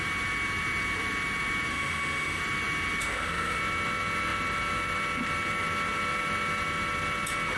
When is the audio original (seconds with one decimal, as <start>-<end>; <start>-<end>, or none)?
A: 0.0-1.7; 2.4-3.0; 3.6-7.6